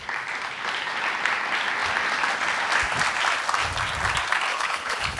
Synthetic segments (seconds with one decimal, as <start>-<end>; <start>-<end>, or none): 4.5-5.2